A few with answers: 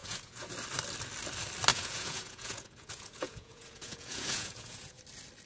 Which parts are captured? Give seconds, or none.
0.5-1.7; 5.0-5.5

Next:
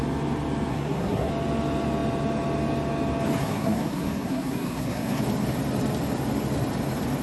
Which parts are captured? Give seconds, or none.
0.0-0.7; 1.3-3.4; 5.2-7.2

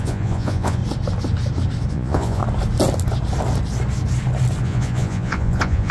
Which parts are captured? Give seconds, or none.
0.8-1.9; 2.4-4.6

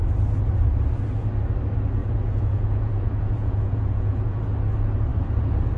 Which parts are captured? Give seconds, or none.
0.0-2.0; 4.4-5.8

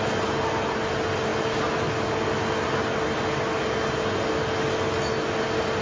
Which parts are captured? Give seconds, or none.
0.0-5.8

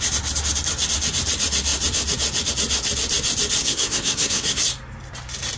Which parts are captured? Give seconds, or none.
0.0-3.6; 4.6-5.6